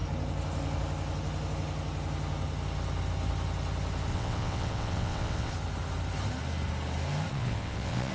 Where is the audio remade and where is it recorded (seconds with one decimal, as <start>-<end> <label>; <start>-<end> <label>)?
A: 0.0-4.1 recorded; 4.1-5.5 remade; 5.5-7.3 recorded; 7.3-8.1 remade